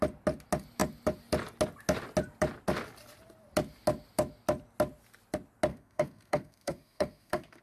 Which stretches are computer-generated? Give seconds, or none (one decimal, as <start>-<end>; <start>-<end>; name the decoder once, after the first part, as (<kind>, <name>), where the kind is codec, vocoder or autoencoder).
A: 5.7-7.6 (codec, SNAC)